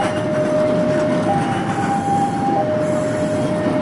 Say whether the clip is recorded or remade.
recorded